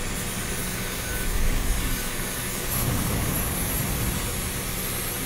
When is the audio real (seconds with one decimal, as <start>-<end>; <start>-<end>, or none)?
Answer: 0.0-0.6; 3.8-5.3